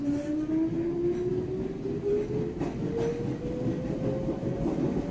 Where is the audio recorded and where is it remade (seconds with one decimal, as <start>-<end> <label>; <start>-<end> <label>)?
0.0-5.1 recorded